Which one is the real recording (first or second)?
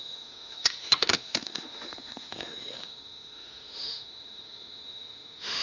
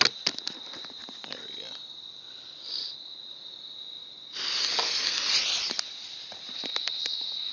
second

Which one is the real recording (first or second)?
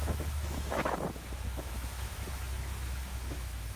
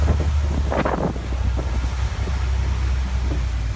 second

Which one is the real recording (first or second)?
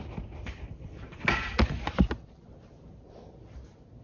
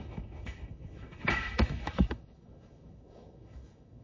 first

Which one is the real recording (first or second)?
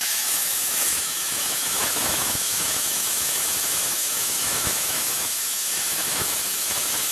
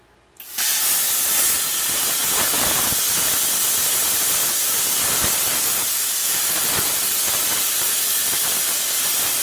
second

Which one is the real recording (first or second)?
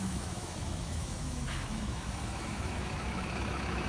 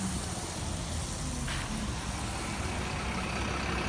second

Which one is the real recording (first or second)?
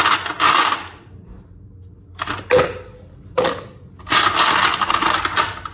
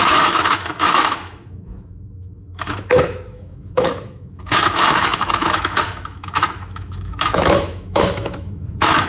first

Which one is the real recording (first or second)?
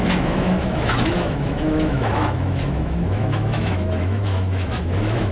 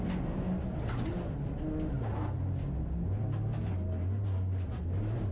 second